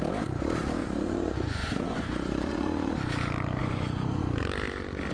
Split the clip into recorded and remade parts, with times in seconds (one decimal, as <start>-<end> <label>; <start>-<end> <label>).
0.0-0.8 recorded; 0.8-2.9 remade; 2.9-3.6 recorded; 3.6-4.2 remade; 4.2-5.1 recorded